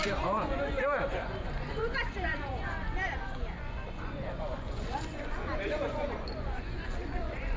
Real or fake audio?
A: fake